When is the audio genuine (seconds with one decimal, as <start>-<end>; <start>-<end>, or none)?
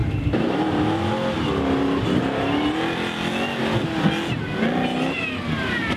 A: 0.0-6.0